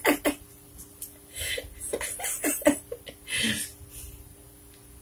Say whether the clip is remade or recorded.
recorded